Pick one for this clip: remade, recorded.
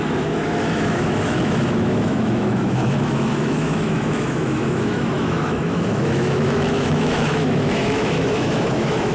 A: remade